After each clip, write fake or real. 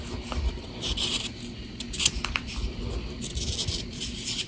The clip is real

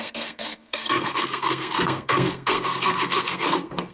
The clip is fake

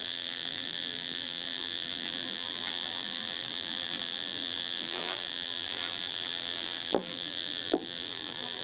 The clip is fake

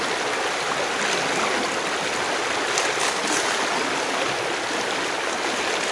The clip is real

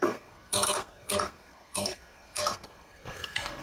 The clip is fake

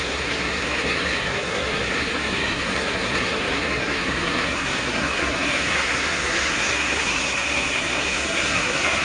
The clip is fake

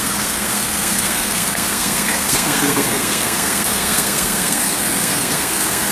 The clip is fake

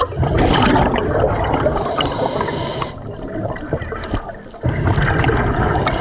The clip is real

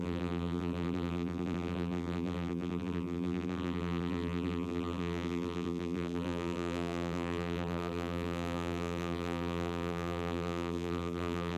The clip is fake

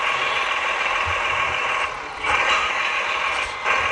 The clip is fake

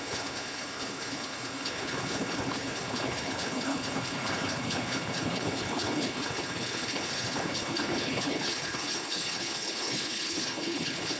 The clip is fake